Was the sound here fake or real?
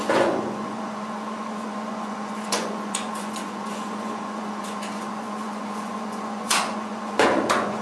fake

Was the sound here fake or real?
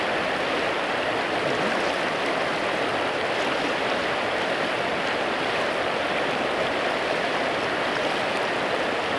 real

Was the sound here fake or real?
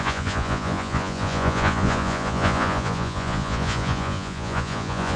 fake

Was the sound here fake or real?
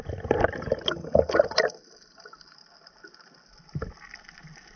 real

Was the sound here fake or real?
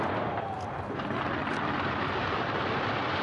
real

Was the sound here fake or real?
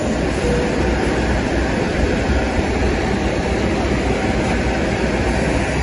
fake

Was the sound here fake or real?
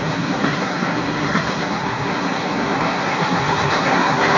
fake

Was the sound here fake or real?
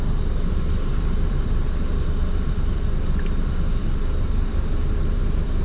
fake